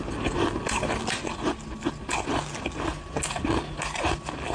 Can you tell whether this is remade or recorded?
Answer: recorded